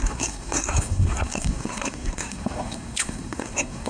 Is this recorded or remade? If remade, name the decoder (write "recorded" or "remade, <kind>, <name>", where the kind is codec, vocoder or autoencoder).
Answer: remade, codec, SNAC